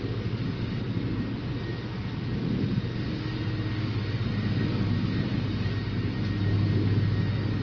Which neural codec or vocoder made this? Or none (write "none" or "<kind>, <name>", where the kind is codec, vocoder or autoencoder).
none